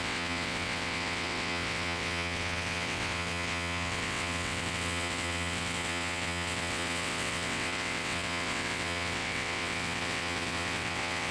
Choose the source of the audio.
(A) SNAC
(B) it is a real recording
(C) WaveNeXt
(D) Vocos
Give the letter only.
C